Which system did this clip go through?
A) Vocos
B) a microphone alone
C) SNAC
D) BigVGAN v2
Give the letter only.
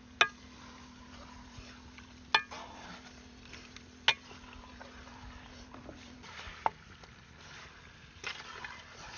B